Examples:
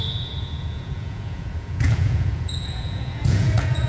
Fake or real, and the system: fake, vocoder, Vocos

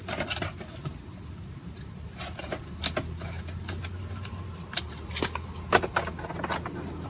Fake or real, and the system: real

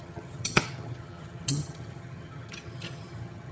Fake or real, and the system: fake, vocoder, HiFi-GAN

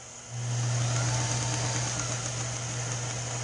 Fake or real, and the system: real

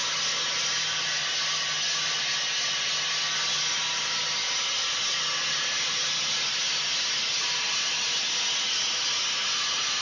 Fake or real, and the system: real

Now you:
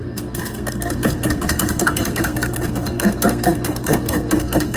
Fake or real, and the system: fake, codec, SNAC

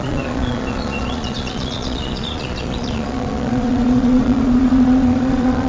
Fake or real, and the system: fake, vocoder, Vocos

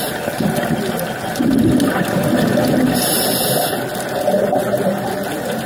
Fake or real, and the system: real